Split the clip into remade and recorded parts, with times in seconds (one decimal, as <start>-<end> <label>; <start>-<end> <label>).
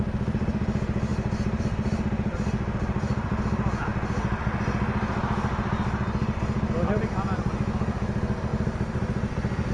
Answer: 0.0-9.7 recorded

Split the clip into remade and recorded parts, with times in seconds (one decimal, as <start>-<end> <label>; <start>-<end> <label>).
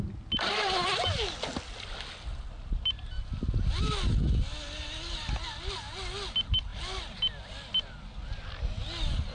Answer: 0.0-9.3 recorded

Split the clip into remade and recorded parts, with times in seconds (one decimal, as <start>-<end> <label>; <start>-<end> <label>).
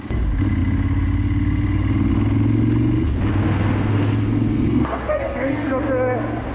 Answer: 0.0-3.3 recorded; 3.3-5.7 remade; 5.7-6.5 recorded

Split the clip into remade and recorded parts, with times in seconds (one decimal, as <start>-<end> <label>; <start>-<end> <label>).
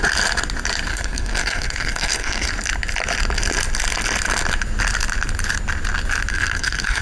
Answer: 0.0-0.9 recorded; 0.9-2.5 remade; 2.5-6.3 recorded; 6.3-7.0 remade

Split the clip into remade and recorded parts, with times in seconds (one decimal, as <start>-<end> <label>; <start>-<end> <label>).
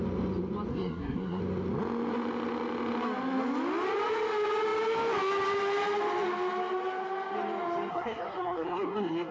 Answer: 0.0-0.7 recorded; 0.7-1.4 remade; 1.4-7.9 recorded; 7.9-9.3 remade